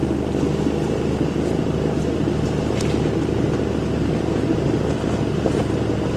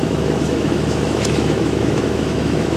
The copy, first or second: second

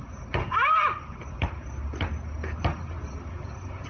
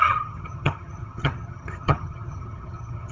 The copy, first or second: second